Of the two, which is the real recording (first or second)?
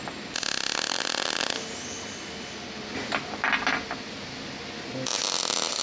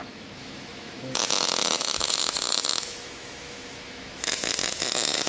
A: first